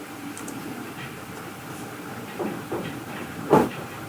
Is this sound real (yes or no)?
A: no